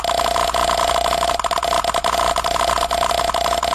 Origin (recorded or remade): recorded